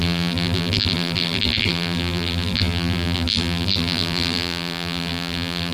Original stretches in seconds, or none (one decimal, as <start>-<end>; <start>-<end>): none